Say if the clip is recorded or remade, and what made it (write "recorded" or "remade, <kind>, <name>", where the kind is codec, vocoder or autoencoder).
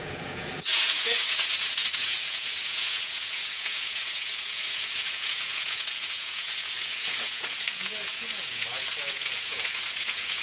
remade, vocoder, Vocos